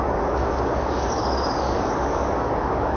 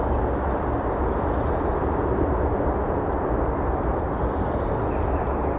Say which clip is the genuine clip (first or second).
second